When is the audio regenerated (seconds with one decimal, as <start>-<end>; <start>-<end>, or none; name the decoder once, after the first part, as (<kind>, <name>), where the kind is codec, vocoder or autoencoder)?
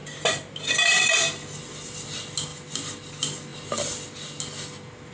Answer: none